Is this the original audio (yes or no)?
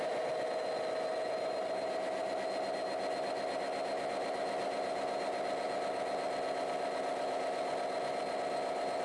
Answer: yes